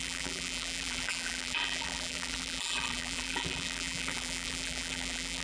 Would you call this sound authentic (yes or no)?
no